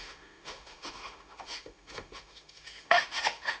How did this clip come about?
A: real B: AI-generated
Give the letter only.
B